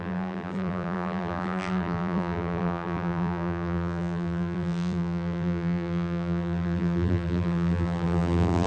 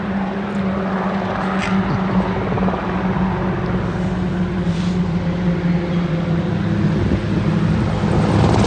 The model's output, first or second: first